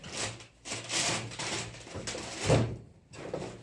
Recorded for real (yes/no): yes